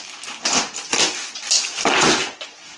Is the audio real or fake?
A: real